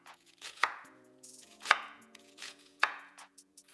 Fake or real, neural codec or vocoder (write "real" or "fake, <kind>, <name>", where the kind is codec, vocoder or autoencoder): fake, vocoder, Vocos